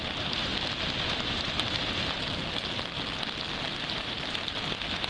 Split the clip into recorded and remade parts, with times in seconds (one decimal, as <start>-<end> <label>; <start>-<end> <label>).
0.0-0.5 remade; 0.5-1.0 recorded; 1.0-2.4 remade; 2.4-3.6 recorded; 3.6-5.1 remade